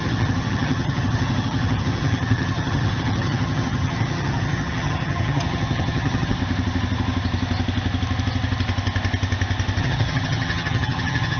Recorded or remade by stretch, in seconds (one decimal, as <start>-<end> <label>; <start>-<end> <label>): 0.0-6.4 remade; 6.4-9.8 recorded; 9.8-11.4 remade